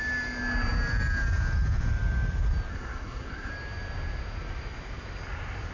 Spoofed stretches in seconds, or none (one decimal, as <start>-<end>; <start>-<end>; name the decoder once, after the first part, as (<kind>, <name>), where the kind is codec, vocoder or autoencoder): 2.7-3.5 (codec, SNAC)